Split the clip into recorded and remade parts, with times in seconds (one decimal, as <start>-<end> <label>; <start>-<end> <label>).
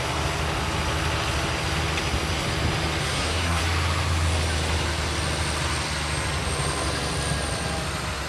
0.0-3.0 recorded; 3.0-3.6 remade; 3.6-8.3 recorded